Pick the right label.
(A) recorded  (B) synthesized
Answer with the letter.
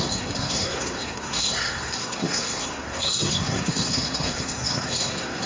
B